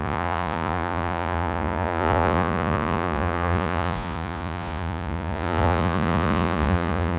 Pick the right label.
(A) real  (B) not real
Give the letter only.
B